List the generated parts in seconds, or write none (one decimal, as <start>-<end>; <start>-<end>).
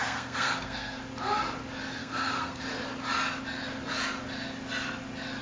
0.0-1.0; 2.0-2.6